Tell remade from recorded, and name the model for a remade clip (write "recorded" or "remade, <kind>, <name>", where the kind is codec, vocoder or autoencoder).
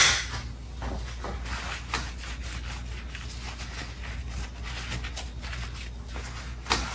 recorded